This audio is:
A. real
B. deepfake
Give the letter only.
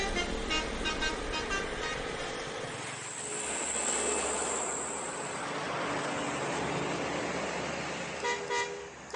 A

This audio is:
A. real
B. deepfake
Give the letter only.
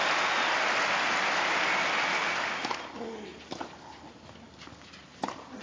A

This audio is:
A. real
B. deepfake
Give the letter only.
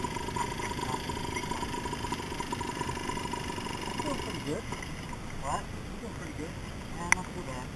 A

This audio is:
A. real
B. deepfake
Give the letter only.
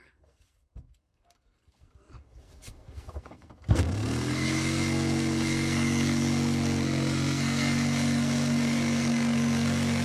B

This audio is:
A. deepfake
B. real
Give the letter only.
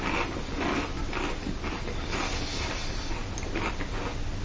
B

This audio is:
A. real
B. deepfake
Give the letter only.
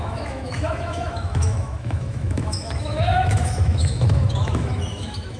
B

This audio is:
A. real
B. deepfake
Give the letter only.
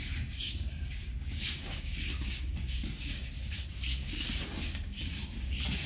B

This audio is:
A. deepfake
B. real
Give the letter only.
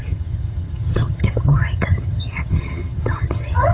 A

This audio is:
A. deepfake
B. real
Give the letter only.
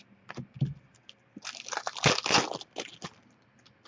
B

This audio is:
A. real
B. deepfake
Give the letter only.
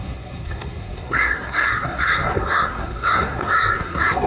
B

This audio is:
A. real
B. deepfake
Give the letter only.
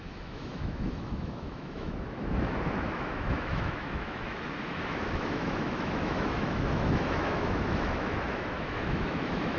B